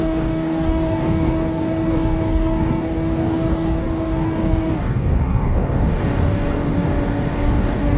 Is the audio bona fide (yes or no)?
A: no